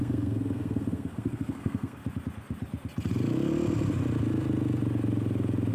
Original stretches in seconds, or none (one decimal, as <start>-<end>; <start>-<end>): 2.0-5.7